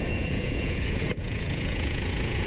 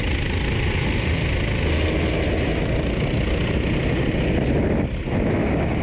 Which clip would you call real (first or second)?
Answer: second